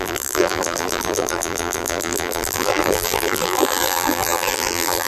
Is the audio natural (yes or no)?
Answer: no